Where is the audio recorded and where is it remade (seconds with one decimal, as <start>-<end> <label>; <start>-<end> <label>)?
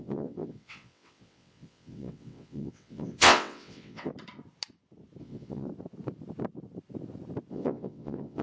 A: 0.0-4.1 remade; 4.1-5.2 recorded; 5.2-5.7 remade; 5.7-7.5 recorded; 7.5-8.4 remade